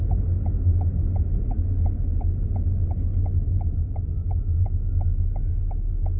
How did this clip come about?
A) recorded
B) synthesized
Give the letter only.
A